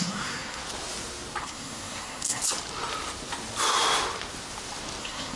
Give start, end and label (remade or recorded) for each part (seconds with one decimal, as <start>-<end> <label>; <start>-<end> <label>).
0.0-0.6 remade; 0.6-1.4 recorded; 1.4-2.4 remade; 2.4-5.0 recorded; 5.0-5.4 remade